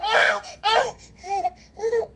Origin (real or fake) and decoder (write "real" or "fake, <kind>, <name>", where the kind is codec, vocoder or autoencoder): fake, codec, SNAC